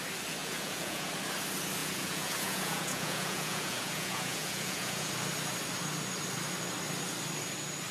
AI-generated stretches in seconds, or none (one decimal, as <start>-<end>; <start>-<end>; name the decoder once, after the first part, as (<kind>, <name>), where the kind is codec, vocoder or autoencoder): 0.4-1.1 (vocoder, Vocos); 1.8-5.1